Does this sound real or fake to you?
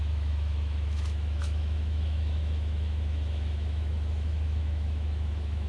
fake